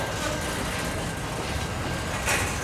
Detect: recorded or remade recorded